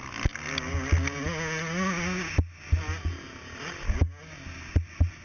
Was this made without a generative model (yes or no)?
yes